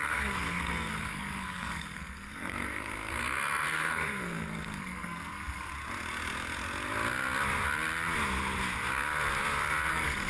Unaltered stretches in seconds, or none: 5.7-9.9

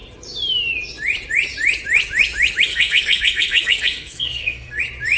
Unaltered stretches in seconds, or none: 0.0-2.7; 4.8-5.2